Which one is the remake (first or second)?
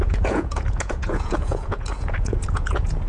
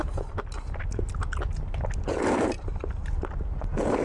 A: first